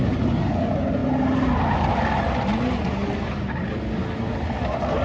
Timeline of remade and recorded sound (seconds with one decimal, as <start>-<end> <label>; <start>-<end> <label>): 0.0-5.0 recorded

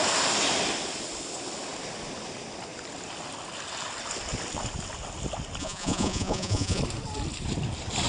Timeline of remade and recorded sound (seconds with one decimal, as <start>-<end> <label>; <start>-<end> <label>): 0.0-5.6 recorded; 5.6-6.8 remade; 6.8-8.1 recorded